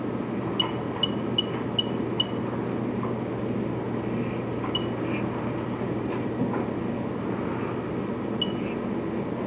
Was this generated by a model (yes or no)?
no